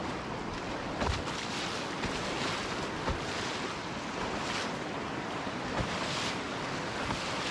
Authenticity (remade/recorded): recorded